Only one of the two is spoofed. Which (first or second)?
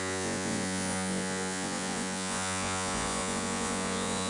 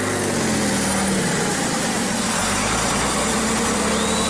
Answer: first